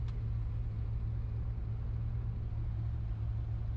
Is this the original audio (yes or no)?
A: yes